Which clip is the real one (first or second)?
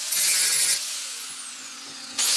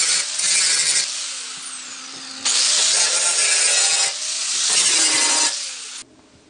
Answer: second